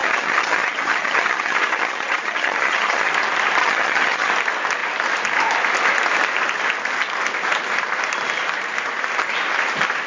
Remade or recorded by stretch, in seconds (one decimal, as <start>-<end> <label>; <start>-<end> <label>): 0.0-3.1 remade; 3.1-3.6 recorded; 3.6-4.3 remade; 4.3-10.1 recorded